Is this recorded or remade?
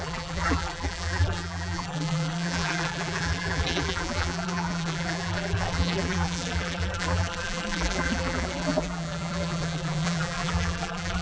remade